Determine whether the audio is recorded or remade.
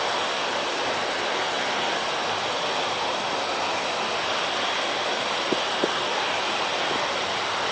recorded